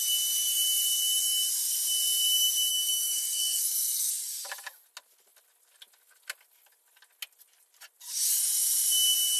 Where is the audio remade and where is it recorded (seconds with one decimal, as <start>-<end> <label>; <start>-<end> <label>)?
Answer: 0.0-2.7 recorded; 2.7-4.1 remade; 4.1-9.4 recorded